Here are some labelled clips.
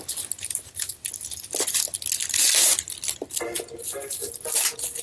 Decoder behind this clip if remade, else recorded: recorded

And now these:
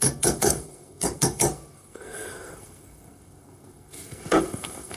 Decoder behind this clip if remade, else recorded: remade, codec, SNAC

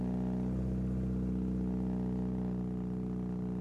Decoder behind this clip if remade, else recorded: recorded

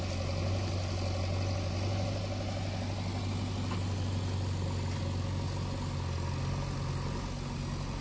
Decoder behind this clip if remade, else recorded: recorded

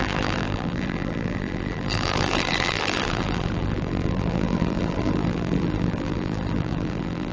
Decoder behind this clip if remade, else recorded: remade, vocoder, BigVGAN v2